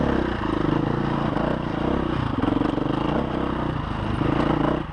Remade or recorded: recorded